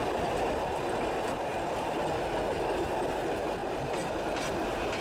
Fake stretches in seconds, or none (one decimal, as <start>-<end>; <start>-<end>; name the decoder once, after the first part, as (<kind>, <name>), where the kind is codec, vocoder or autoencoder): 0.0-0.8 (vocoder, BigVGAN v2); 1.5-2.0; 3.6-4.1